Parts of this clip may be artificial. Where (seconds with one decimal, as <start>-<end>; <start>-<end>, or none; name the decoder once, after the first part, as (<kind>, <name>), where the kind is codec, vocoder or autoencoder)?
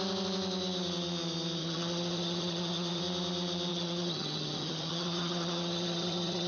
1.6-3.0 (vocoder, HiFi-GAN); 3.7-6.5